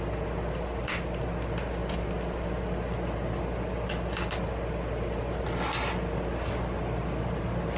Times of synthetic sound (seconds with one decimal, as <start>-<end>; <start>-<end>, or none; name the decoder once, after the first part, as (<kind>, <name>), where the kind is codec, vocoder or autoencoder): none